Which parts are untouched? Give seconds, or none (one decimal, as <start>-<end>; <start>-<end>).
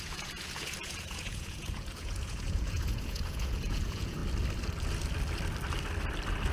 4.2-6.5